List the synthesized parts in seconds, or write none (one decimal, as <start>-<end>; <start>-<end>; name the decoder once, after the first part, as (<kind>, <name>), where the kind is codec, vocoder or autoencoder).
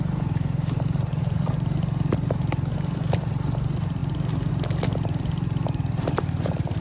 none